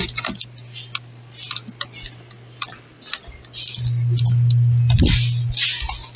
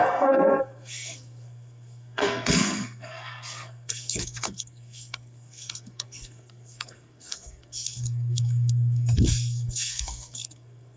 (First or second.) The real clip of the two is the first